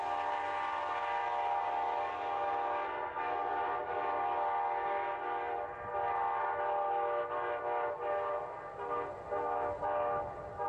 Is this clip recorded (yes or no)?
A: yes